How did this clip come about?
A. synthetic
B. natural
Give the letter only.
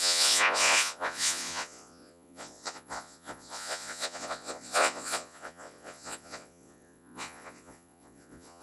A